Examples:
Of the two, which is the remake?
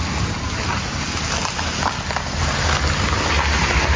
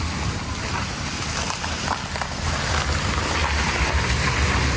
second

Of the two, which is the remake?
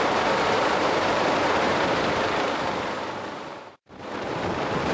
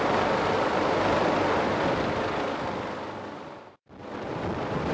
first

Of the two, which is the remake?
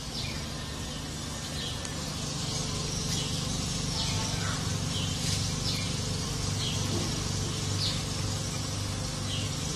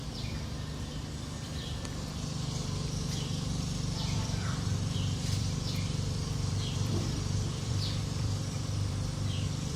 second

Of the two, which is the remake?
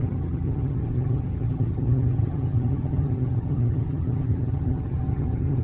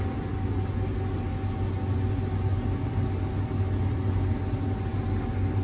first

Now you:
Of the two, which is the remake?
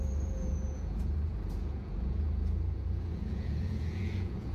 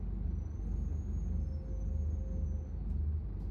first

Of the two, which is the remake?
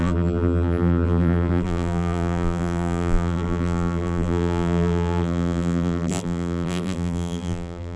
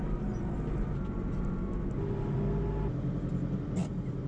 first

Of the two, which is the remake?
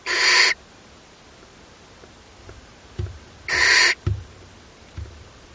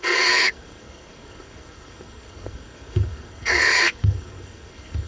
second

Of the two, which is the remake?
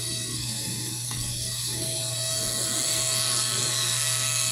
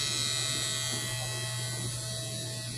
first